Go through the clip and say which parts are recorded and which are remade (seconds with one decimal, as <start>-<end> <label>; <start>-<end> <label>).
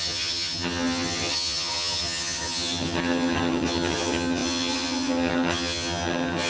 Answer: 0.0-6.5 remade